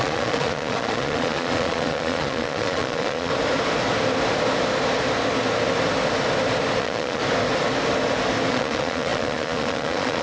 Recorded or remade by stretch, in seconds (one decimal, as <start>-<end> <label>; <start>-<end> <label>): 0.0-3.3 remade; 3.3-6.8 recorded; 6.8-7.2 remade; 7.2-8.5 recorded; 8.5-10.2 remade